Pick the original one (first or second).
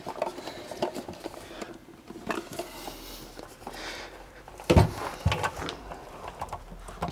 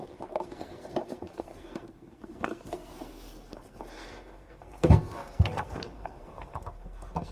first